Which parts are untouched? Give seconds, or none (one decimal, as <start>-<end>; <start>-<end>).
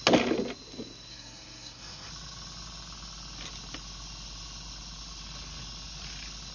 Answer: 0.0-1.1; 2.1-6.5